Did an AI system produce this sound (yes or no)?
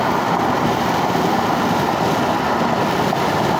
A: no